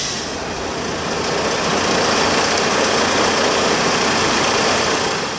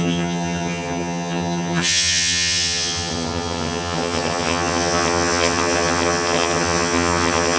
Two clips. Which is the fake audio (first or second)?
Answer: second